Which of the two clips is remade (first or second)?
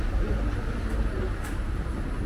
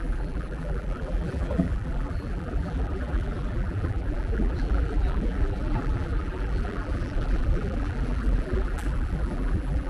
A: second